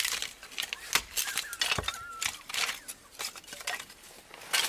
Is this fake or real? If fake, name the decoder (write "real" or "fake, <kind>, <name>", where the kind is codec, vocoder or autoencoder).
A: real